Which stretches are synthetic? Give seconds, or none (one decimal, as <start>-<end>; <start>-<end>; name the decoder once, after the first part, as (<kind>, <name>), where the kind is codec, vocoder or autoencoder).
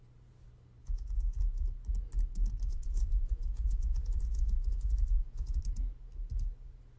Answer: 0.8-1.4 (vocoder, Vocos); 2.7-5.6